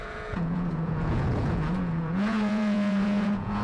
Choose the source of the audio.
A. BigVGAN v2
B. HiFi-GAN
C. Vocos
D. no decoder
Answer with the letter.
C